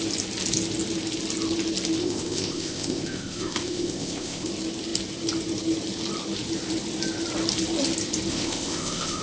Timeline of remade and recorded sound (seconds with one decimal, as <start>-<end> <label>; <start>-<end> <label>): 0.0-2.0 recorded; 2.0-4.5 remade; 4.5-8.3 recorded; 8.3-9.2 remade